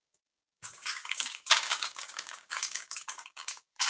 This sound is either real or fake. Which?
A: fake